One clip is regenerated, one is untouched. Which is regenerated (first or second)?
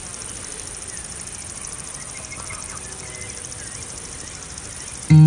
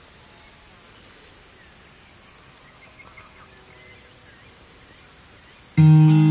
first